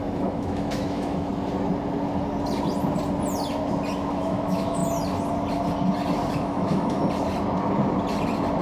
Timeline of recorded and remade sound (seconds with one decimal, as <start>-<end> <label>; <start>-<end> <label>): 0.0-1.3 remade; 1.3-4.1 recorded; 4.1-4.8 remade; 4.8-6.3 recorded; 6.3-7.0 remade; 7.0-8.6 recorded